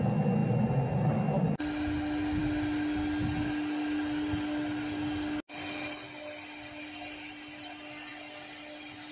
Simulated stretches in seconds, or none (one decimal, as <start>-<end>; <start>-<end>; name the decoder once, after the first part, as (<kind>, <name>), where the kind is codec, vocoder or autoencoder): none